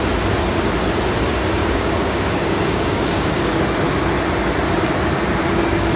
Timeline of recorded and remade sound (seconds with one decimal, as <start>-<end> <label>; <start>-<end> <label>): 0.0-1.6 recorded; 1.6-3.5 remade; 3.5-6.0 recorded